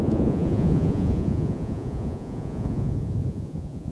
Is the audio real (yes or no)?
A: no